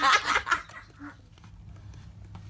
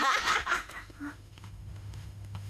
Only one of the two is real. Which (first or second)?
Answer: first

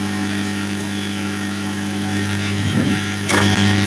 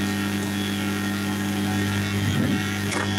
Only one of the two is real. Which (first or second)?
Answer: second